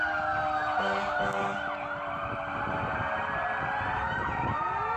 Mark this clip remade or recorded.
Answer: recorded